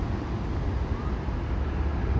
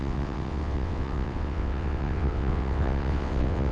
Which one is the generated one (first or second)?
second